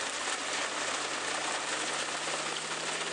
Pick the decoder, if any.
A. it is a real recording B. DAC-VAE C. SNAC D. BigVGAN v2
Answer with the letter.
A